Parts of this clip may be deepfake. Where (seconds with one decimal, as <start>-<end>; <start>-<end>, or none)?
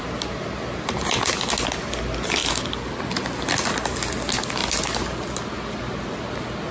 none